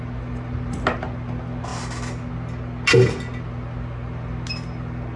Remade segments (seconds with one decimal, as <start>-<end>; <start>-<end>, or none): none